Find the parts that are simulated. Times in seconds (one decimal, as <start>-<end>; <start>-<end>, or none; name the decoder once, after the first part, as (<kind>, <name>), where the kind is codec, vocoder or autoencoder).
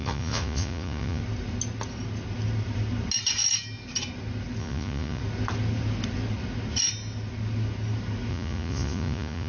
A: 0.0-1.2 (vocoder, Vocos); 4.6-5.2; 8.3-9.5